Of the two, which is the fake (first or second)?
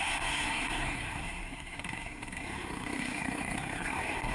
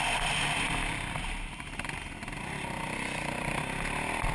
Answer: first